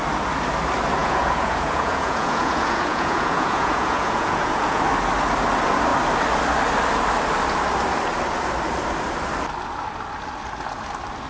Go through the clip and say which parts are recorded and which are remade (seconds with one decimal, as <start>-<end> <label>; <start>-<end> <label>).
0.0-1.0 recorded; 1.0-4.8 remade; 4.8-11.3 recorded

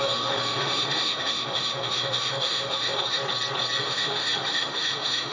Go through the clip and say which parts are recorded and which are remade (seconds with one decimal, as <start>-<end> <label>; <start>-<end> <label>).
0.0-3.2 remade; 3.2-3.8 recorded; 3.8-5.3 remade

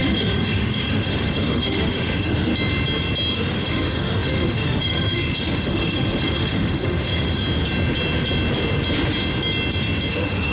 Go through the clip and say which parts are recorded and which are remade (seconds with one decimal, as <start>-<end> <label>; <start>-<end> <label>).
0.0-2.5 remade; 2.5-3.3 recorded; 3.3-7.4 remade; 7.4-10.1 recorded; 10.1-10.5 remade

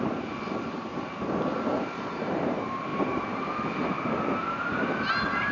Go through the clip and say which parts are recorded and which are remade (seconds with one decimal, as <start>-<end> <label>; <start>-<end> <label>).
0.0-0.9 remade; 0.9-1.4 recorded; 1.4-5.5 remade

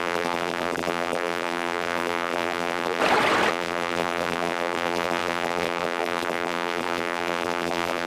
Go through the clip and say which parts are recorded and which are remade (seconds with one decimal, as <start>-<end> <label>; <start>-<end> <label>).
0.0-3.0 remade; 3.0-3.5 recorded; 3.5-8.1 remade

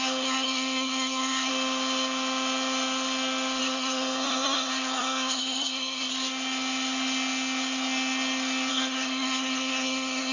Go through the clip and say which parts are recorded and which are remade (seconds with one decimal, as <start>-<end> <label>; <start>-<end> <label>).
0.0-1.5 remade; 1.5-3.6 recorded; 3.6-6.1 remade; 6.1-8.7 recorded; 8.7-10.3 remade